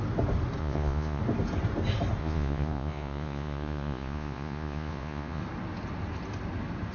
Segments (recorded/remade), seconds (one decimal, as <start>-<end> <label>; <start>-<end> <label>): 0.0-0.6 recorded; 0.6-1.2 remade; 1.2-2.2 recorded; 2.2-5.4 remade; 5.4-6.9 recorded